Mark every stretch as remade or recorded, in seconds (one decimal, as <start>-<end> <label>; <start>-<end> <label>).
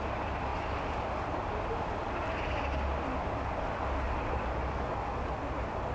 0.0-5.9 recorded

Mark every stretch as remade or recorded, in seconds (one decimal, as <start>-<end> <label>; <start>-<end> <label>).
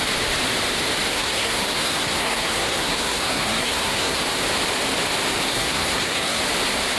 0.0-1.1 recorded; 1.1-4.2 remade; 4.2-5.5 recorded; 5.5-6.4 remade; 6.4-7.0 recorded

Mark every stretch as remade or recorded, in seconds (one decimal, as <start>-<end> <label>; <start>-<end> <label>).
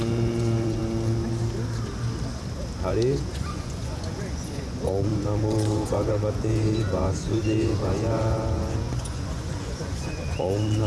0.0-0.8 remade; 0.8-2.9 recorded; 2.9-10.9 remade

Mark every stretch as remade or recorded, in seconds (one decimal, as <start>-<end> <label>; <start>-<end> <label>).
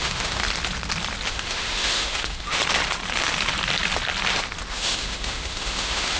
0.0-0.4 remade; 0.4-1.3 recorded; 1.3-2.6 remade; 2.6-4.7 recorded; 4.7-6.2 remade